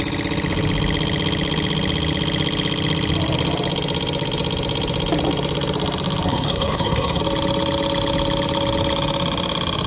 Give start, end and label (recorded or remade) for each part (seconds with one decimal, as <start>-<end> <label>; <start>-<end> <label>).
0.0-6.3 recorded; 6.3-7.2 remade; 7.2-9.9 recorded